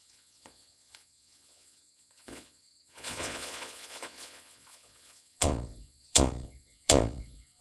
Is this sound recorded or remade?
remade